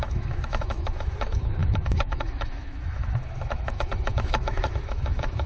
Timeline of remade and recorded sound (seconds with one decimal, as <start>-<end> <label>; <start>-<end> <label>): 0.0-5.5 remade